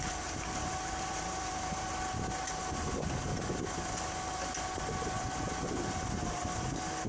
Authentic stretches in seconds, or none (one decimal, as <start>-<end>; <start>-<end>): 0.0-0.6; 1.9-7.1